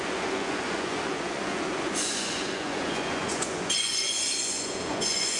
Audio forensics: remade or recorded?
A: remade